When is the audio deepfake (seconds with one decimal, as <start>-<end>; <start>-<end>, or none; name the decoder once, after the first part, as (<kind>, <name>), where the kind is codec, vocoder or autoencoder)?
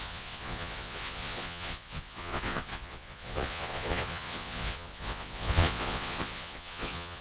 0.0-7.2 (vocoder, Vocos)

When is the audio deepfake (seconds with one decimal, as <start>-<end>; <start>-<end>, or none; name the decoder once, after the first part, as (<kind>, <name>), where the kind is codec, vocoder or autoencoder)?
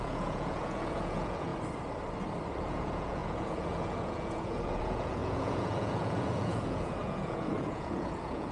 0.0-1.5 (vocoder, Vocos); 2.6-8.5